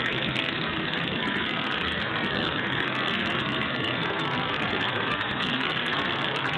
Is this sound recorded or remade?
remade